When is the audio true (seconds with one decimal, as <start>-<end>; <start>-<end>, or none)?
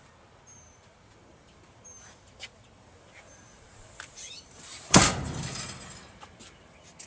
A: 0.0-3.5; 5.5-7.1